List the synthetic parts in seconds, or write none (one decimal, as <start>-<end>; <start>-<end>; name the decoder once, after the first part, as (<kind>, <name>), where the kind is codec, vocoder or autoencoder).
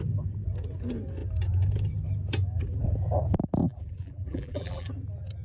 3.6-4.9 (vocoder, BigVGAN v2)